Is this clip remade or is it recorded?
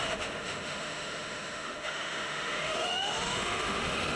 remade